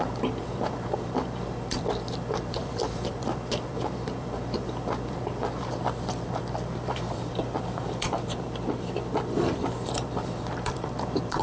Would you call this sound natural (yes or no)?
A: no